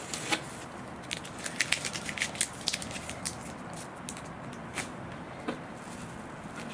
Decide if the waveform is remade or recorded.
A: recorded